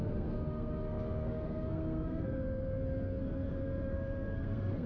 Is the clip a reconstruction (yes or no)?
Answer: yes